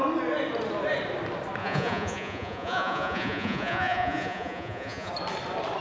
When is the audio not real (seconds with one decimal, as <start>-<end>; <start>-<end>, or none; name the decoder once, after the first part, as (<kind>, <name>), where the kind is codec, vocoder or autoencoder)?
1.6-5.1 (vocoder, Vocos)